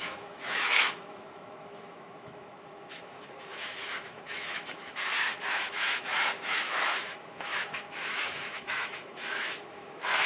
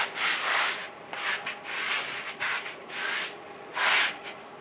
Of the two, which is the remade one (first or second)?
first